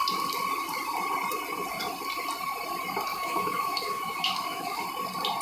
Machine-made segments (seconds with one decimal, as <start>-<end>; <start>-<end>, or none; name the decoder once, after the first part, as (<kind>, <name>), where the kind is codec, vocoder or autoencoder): 3.1-4.8 (autoencoder, DAC-VAE)